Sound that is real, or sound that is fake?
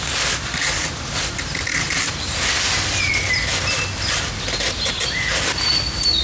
real